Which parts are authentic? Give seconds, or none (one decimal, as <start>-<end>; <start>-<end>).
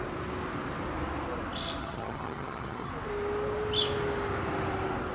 0.0-1.8; 2.9-5.1